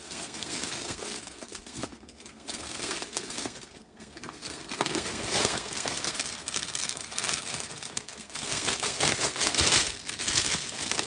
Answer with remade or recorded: remade